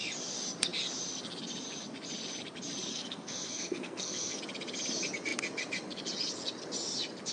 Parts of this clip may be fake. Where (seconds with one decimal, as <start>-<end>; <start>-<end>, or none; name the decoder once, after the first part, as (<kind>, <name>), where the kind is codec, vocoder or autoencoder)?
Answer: 2.9-4.4 (codec, SNAC)